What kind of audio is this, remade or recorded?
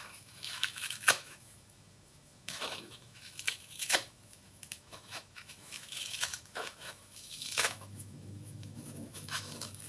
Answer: remade